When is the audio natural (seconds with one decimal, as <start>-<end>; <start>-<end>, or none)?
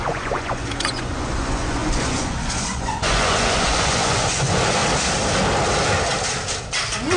4.8-7.2